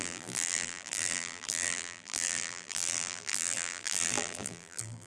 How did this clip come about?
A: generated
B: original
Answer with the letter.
A